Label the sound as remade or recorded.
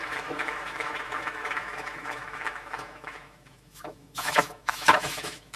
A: remade